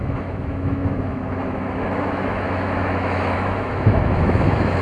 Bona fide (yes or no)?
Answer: no